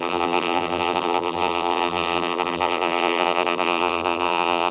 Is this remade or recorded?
remade